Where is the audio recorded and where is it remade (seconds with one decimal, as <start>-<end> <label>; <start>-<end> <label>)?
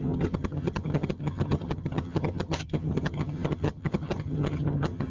0.0-5.1 remade